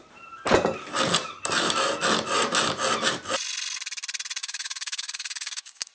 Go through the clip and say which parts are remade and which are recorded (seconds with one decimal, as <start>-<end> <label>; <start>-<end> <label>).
0.0-4.4 recorded; 4.4-5.9 remade